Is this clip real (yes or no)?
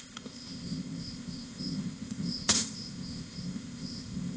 no